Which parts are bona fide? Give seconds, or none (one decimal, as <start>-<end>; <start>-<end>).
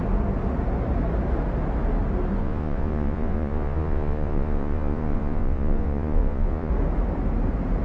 0.0-2.4; 6.7-7.8